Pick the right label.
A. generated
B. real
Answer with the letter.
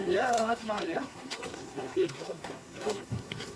A